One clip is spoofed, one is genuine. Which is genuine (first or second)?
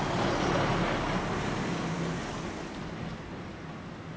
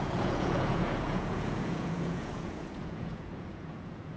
first